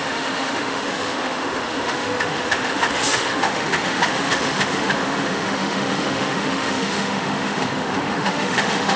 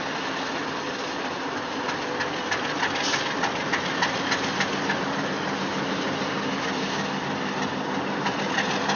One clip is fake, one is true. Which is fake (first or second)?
first